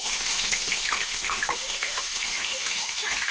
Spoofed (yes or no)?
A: yes